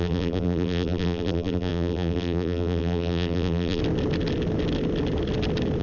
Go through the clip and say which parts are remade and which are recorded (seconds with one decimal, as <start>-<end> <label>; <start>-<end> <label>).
0.0-3.8 remade; 3.8-5.8 recorded